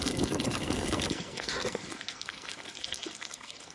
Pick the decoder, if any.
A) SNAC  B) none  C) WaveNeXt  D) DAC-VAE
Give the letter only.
A